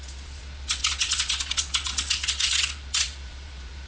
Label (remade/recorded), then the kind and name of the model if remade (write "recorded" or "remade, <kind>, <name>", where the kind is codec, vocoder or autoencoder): remade, vocoder, Vocos